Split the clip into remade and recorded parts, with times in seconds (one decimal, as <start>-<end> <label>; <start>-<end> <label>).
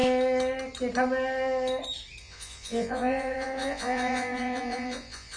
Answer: 0.0-2.2 recorded; 2.2-5.4 remade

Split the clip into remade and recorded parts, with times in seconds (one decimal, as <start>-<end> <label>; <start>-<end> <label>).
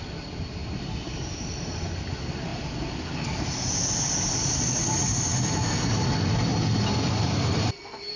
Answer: 0.0-8.2 recorded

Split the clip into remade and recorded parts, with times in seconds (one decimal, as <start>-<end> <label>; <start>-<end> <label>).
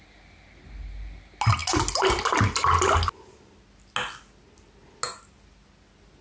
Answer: 0.0-6.2 recorded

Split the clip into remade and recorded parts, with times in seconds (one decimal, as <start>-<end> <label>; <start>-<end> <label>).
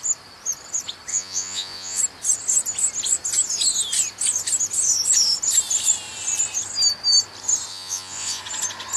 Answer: 0.0-1.1 recorded; 1.1-2.0 remade; 2.0-7.7 recorded; 7.7-8.4 remade; 8.4-9.0 recorded